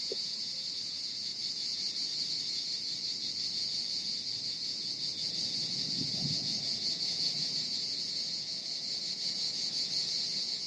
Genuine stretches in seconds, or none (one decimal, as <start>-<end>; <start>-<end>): 1.4-5.4